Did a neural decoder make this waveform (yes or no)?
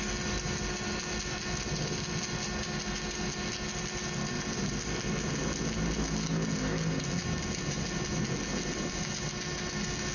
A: no